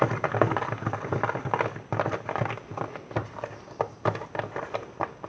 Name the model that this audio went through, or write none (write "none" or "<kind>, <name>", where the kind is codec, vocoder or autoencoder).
none